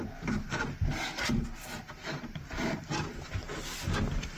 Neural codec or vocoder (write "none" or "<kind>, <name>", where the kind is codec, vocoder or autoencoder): none